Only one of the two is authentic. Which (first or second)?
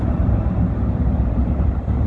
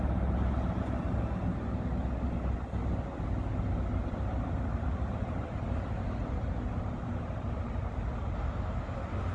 second